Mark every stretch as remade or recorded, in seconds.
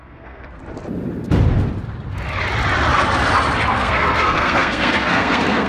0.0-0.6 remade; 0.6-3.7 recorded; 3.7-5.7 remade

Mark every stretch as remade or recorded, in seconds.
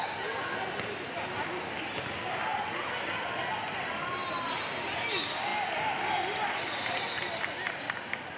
0.0-8.4 recorded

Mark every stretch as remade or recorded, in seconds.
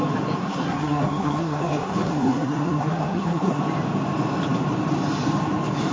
0.0-0.4 recorded; 0.4-3.6 remade; 3.6-5.9 recorded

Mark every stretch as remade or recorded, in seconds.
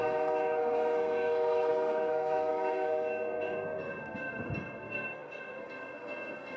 0.0-6.6 remade